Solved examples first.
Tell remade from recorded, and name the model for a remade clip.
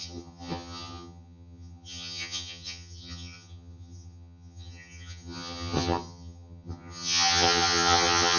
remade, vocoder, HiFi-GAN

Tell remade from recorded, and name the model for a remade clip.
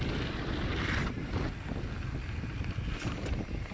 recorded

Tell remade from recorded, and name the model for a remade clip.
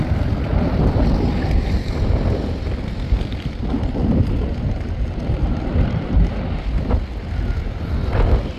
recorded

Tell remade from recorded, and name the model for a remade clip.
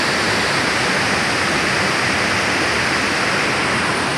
recorded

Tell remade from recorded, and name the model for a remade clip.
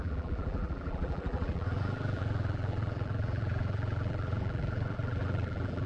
remade, vocoder, BigVGAN v2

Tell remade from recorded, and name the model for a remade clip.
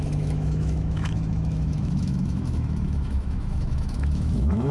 remade, autoencoder, DAC-VAE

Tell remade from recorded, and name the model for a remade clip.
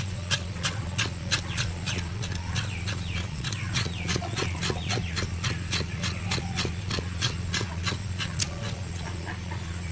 remade, vocoder, Vocos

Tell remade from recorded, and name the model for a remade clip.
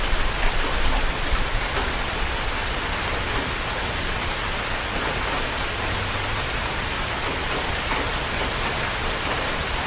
recorded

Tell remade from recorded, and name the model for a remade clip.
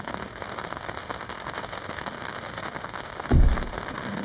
remade, autoencoder, DAC-VAE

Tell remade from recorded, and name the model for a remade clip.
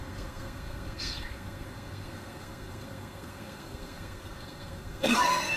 remade, codec, SNAC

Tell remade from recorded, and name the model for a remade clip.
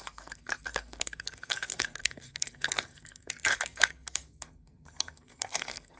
remade, codec, SNAC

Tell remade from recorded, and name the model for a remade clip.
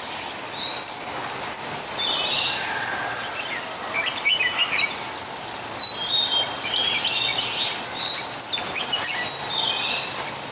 recorded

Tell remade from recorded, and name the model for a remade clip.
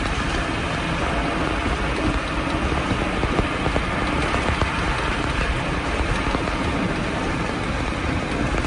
recorded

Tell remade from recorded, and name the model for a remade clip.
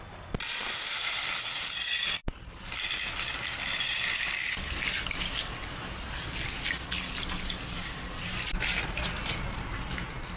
recorded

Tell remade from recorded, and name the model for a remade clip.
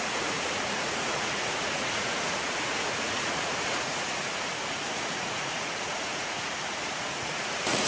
remade, vocoder, Vocos